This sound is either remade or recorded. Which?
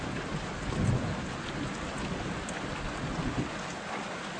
recorded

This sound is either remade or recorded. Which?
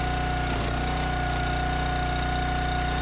recorded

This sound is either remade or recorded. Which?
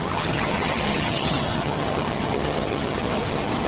remade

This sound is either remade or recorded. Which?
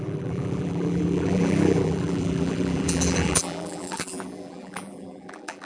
remade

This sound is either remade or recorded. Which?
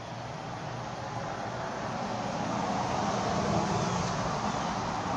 recorded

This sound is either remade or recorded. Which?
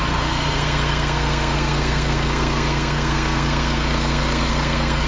remade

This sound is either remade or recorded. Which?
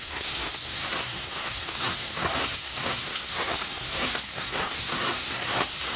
remade